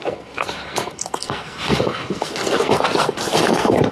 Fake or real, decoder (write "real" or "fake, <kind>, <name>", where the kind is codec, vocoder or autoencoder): fake, codec, SNAC